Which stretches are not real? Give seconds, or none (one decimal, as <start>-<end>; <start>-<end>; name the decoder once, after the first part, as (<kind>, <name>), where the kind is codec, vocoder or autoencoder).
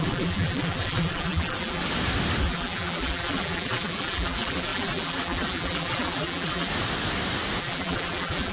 0.0-1.8 (vocoder, BigVGAN v2); 2.4-6.7; 7.6-8.5